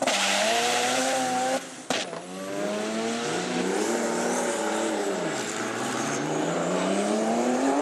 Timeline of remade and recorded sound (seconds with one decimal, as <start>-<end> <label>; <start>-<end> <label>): 0.0-1.0 remade; 1.0-3.6 recorded; 3.6-7.8 remade